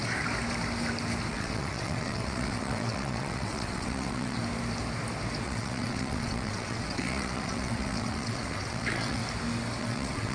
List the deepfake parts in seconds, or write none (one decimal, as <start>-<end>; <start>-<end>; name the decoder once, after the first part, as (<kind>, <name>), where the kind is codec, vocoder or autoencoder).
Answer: 1.3-4.4 (vocoder, WaveNeXt); 5.4-9.2; 9.8-10.3